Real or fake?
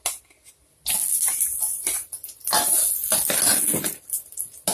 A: real